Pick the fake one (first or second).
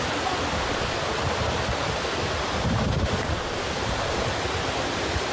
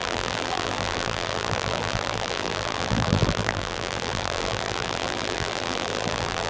second